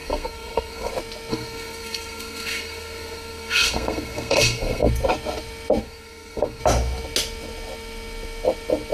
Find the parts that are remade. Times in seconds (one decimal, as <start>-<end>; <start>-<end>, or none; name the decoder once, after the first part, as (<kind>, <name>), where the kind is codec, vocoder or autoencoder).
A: 0.0-0.9 (codec, SNAC); 1.3-4.9; 5.8-6.6